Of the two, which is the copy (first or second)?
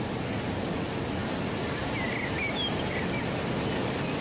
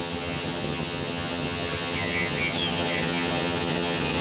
second